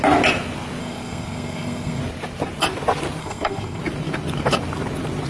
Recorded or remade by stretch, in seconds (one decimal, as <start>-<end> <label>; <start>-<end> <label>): 0.0-0.8 recorded; 0.8-2.0 remade; 2.0-3.2 recorded; 3.2-3.8 remade; 3.8-5.3 recorded